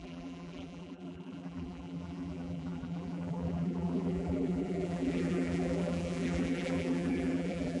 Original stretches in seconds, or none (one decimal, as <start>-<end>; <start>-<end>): none